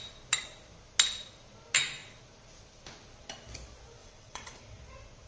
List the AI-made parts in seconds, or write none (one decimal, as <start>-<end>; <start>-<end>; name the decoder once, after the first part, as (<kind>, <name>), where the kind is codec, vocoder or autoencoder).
4.0-4.6 (vocoder, WaveNeXt)

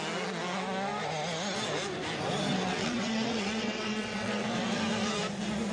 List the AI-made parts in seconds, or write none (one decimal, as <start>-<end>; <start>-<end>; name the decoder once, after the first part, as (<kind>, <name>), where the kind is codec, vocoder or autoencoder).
2.5-4.8 (vocoder, WaveNeXt)

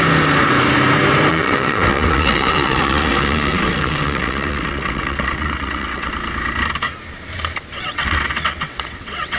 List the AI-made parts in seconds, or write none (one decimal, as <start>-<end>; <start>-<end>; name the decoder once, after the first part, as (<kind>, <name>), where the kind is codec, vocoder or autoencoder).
1.3-6.1 (vocoder, WaveNeXt); 7.7-9.4

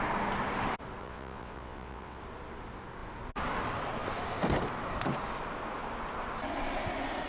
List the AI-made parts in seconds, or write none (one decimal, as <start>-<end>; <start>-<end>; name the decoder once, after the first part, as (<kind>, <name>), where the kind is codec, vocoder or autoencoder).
1.0-2.2 (vocoder, WaveNeXt)